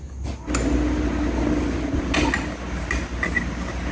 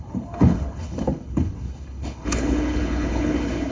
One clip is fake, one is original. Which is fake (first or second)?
second